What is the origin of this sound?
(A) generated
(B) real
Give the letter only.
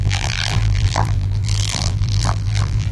A